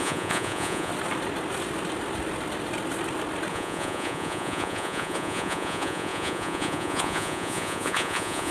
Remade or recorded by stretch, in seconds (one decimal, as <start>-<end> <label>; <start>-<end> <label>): 0.0-0.9 remade; 0.9-3.5 recorded; 3.5-8.5 remade